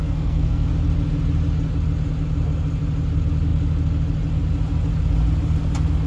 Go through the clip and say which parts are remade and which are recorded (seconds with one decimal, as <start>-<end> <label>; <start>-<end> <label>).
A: 0.0-0.7 remade; 0.7-6.1 recorded

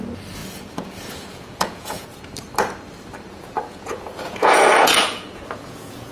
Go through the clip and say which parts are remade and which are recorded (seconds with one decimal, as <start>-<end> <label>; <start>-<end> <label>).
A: 0.0-0.4 recorded; 0.4-2.2 remade; 2.2-3.3 recorded; 3.3-6.1 remade